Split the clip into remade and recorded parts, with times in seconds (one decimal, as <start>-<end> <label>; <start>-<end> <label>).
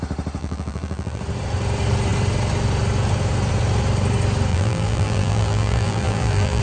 0.0-0.4 recorded; 0.4-1.2 remade; 1.2-4.5 recorded; 4.5-6.6 remade